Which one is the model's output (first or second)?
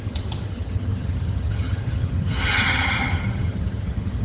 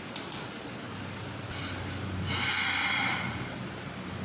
first